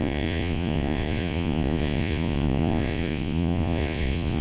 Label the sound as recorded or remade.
remade